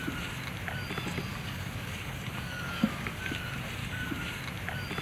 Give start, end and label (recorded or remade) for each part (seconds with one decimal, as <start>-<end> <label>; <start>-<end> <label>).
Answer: 0.0-1.3 recorded; 1.3-3.2 remade; 3.2-3.8 recorded; 3.8-4.4 remade; 4.4-5.0 recorded